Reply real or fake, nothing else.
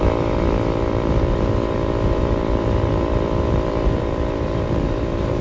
fake